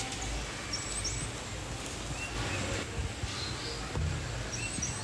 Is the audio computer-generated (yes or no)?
no